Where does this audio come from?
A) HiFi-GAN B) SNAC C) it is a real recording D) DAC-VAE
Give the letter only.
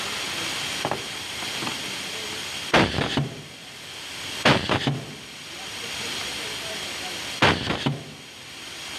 C